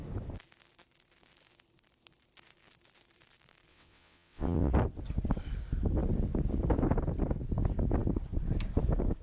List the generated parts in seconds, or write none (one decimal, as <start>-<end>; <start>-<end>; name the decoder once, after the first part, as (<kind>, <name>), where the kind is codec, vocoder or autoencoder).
3.7-4.7 (vocoder, WaveNeXt)